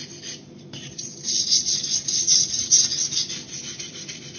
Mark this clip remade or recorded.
recorded